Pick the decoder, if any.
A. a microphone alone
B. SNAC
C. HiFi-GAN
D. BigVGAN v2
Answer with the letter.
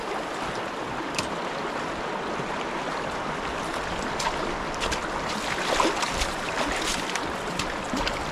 A